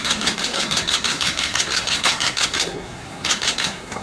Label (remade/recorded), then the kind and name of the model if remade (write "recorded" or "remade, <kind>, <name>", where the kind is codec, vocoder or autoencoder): remade, codec, SNAC